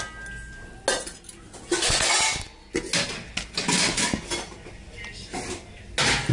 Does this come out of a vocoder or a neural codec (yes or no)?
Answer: no